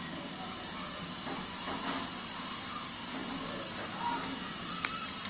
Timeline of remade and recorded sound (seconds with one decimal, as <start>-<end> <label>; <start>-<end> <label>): 0.0-5.3 recorded